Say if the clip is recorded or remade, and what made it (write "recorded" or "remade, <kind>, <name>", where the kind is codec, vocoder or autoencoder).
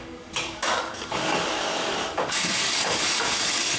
remade, codec, DAC